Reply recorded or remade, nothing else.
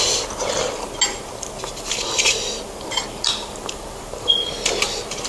recorded